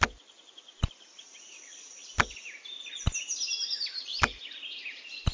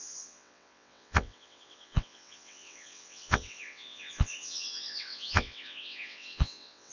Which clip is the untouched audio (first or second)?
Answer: first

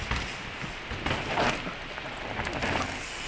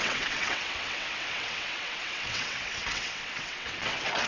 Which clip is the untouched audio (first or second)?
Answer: first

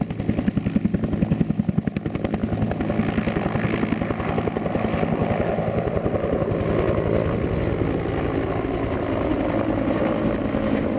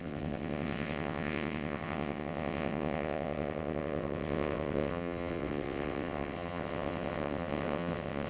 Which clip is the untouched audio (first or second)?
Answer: first